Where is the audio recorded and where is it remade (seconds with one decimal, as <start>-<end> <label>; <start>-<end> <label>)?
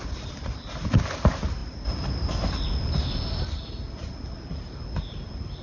0.0-5.6 recorded